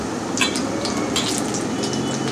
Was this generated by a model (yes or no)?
no